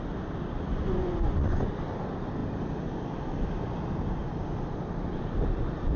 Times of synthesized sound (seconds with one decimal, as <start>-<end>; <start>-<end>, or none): 0.7-1.7